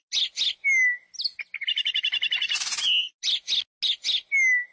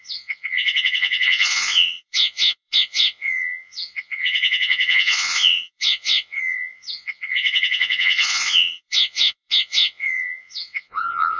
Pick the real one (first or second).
first